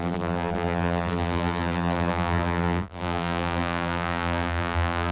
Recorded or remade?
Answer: remade